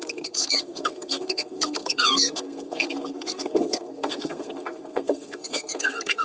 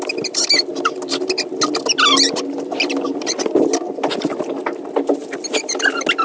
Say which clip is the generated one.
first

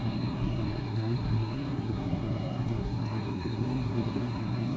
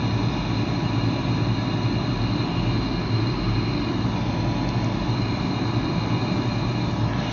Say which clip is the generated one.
first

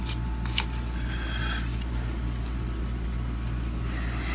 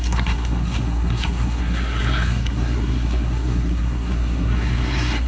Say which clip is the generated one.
second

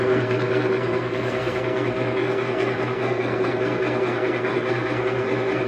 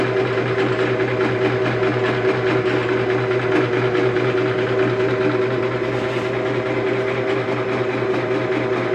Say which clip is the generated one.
first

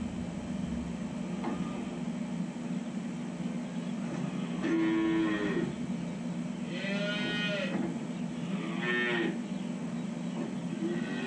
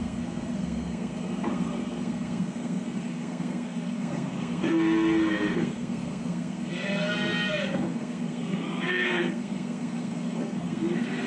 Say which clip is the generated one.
second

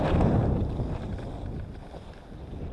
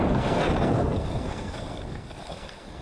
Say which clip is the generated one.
second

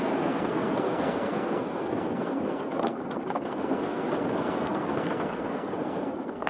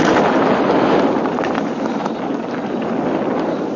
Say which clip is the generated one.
first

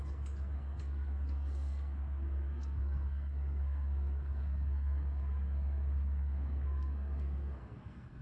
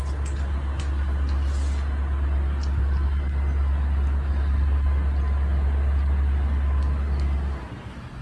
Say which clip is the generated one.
first